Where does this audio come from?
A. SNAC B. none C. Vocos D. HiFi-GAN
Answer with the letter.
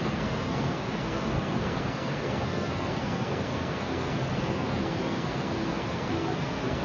A